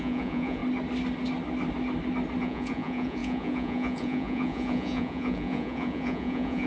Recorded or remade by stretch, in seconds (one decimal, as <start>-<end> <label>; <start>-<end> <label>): 0.0-0.6 remade; 0.6-2.4 recorded; 2.4-6.7 remade